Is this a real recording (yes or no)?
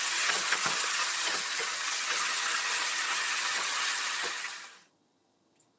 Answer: no